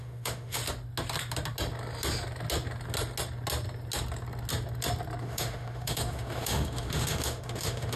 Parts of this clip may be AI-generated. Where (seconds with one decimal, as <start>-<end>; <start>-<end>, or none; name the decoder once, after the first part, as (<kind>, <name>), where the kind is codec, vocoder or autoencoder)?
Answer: 0.0-0.6 (autoencoder, DAC-VAE); 5.2-8.0